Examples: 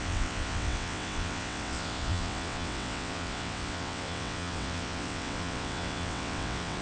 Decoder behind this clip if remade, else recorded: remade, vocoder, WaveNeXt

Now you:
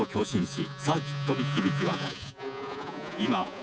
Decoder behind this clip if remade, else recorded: remade, vocoder, Vocos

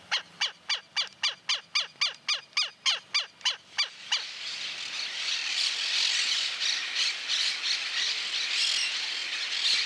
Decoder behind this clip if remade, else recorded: recorded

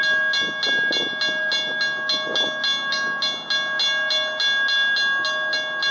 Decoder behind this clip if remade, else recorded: recorded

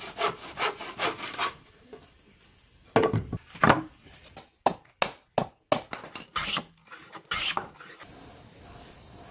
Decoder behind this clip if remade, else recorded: recorded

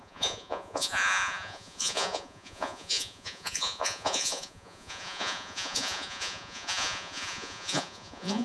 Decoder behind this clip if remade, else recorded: remade, vocoder, Vocos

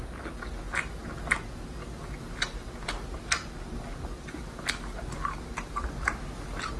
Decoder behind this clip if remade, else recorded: recorded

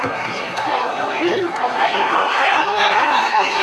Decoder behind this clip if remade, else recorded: remade, codec, SNAC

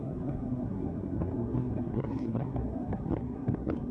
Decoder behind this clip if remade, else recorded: remade, codec, SNAC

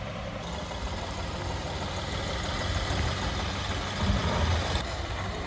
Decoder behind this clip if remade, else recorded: recorded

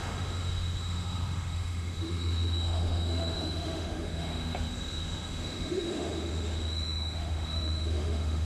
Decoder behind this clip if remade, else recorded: remade, autoencoder, DAC-VAE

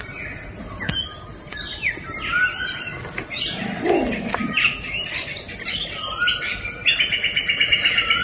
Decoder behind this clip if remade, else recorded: recorded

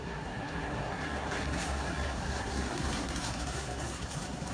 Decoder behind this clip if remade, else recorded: remade, codec, SNAC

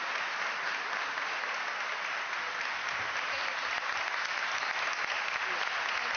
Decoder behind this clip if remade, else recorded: recorded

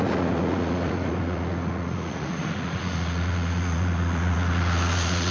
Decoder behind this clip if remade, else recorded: remade, vocoder, Vocos